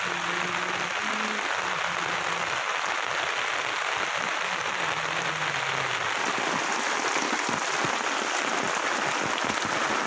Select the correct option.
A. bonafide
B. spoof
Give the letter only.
A